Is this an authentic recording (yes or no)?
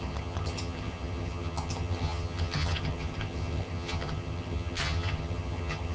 no